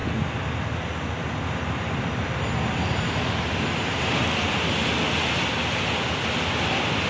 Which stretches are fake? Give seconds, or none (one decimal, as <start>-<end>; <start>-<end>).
none